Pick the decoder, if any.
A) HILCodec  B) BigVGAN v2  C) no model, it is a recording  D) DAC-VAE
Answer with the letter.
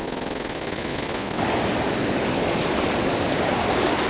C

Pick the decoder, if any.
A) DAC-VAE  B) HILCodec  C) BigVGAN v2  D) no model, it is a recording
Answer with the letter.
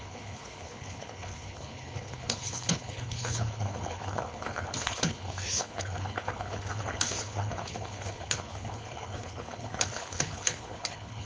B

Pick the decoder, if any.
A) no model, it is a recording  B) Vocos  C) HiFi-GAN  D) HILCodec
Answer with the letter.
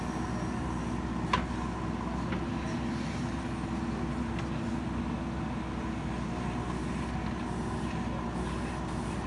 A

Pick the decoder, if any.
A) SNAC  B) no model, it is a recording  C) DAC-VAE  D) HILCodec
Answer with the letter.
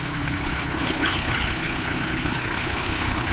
D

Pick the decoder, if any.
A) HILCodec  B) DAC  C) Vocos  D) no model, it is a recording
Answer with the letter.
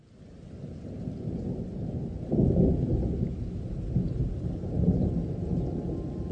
D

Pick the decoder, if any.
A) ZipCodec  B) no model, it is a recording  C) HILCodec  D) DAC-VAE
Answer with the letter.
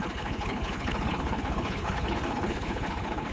C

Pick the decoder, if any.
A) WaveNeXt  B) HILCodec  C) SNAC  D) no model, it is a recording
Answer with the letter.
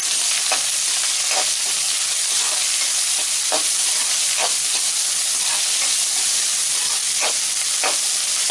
D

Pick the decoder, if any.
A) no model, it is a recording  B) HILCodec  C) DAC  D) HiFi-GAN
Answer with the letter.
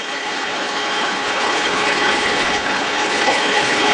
B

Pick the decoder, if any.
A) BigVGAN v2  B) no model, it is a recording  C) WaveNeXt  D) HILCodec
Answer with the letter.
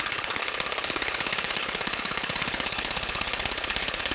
D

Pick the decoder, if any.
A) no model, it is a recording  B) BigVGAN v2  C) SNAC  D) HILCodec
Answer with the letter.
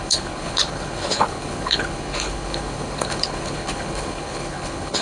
D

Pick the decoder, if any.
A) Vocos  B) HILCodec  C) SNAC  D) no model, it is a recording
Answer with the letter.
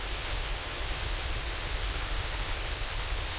B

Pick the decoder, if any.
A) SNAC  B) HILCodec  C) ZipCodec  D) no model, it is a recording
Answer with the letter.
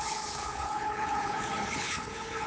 B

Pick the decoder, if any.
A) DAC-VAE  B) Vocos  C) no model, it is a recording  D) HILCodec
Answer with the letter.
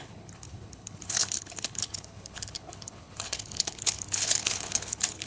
D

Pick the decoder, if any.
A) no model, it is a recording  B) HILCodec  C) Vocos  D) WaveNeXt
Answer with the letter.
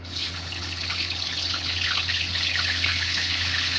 B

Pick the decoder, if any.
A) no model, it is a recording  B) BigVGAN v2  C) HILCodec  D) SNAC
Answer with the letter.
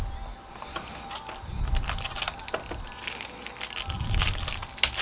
A